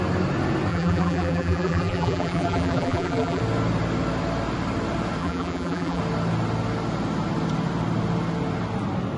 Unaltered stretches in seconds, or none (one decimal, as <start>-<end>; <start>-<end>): 0.0-0.7; 3.4-5.2; 6.0-9.2